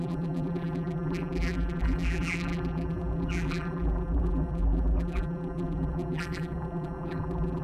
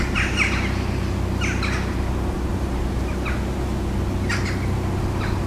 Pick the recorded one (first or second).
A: second